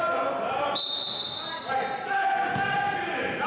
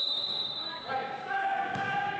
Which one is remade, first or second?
second